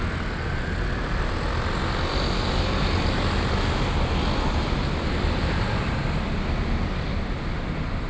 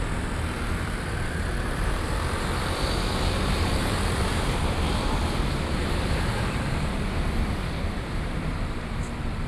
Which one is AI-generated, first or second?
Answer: second